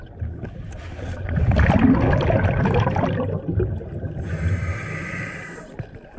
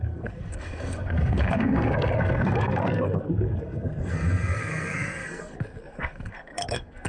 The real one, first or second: first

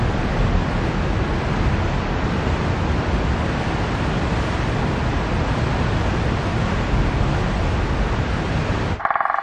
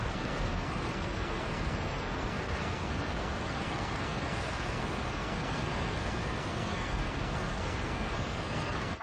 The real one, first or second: first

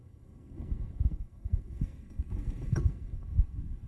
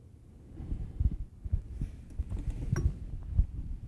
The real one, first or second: second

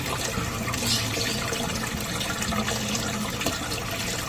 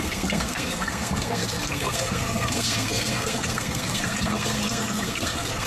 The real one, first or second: first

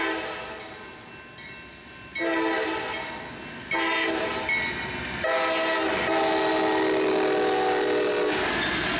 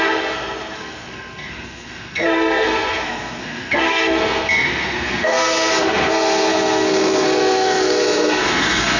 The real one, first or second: first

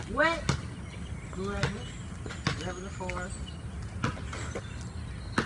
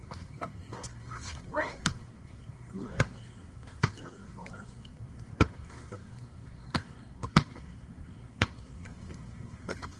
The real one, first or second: first